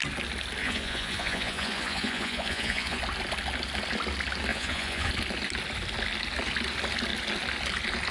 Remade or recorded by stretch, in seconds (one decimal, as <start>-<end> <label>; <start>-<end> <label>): 0.0-0.6 recorded; 0.6-3.0 remade; 3.0-4.5 recorded; 4.5-5.1 remade; 5.1-8.1 recorded